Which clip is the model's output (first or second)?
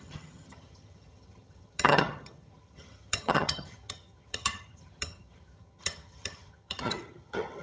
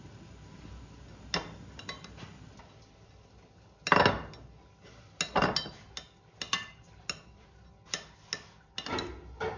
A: first